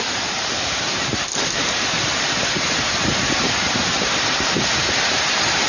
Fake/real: fake